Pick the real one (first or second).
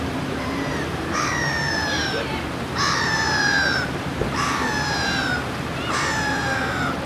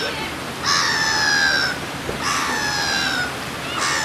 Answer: second